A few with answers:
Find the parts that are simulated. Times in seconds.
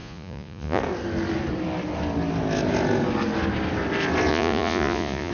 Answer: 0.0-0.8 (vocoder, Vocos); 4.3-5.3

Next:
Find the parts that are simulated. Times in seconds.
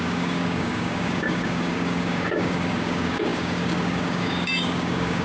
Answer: 0.0-5.2 (codec, DAC)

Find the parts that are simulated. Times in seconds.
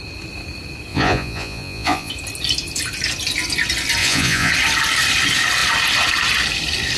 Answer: 0.9-2.1 (vocoder, Vocos); 4.0-4.5